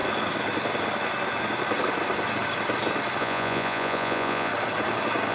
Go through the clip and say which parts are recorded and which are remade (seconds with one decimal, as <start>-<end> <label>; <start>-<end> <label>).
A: 0.0-3.2 recorded; 3.2-4.5 remade; 4.5-5.3 recorded